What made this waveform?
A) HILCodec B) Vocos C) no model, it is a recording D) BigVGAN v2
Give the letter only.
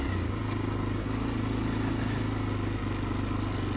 C